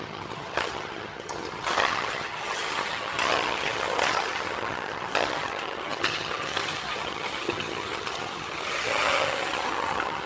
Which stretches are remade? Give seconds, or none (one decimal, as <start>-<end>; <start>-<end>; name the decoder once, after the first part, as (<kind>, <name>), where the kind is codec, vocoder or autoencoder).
0.0-10.3 (vocoder, HiFi-GAN)